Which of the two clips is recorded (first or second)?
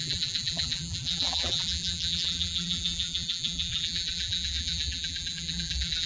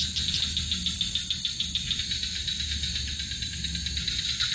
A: second